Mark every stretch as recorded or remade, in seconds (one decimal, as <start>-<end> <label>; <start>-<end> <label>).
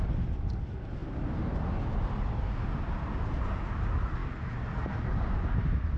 0.0-6.0 recorded